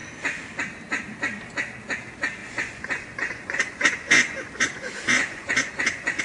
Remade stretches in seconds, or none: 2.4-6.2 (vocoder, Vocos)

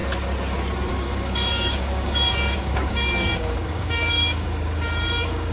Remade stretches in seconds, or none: 0.9-5.5 (codec, DAC)

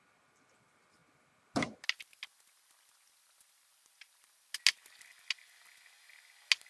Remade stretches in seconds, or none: none

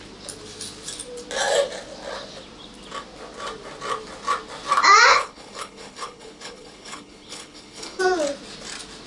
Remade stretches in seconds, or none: 5.1-8.0 (codec, HILCodec)

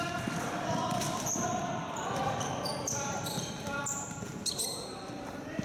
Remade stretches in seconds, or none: 0.0-5.6 (vocoder, BigVGAN v2)

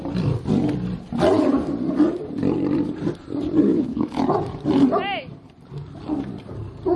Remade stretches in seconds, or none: 3.7-4.2 (autoencoder, DAC-VAE)